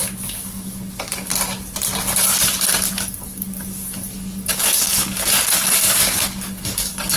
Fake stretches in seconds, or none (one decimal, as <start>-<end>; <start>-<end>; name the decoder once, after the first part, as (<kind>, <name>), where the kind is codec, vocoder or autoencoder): 0.0-1.3 (codec, DAC); 3.0-7.2